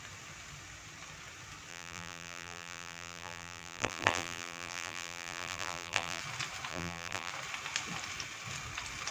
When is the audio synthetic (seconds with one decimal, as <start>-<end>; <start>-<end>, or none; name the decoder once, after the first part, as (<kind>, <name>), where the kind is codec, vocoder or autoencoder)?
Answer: 1.7-6.2 (vocoder, BigVGAN v2); 6.7-7.3